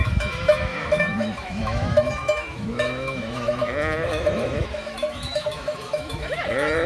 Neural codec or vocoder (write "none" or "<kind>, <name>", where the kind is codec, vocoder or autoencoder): autoencoder, DAC-VAE